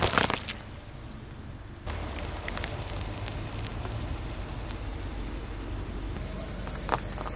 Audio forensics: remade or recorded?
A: recorded